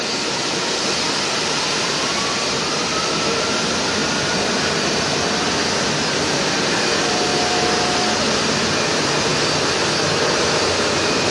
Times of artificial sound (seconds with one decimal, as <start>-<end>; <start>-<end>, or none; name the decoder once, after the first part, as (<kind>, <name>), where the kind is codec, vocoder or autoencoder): 0.0-4.0 (vocoder, BigVGAN v2); 5.8-7.3; 8.0-9.3; 10.3-11.3